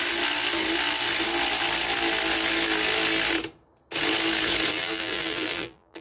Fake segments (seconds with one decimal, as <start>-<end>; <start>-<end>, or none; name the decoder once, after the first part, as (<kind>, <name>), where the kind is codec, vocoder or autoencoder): 4.7-6.0 (vocoder, BigVGAN v2)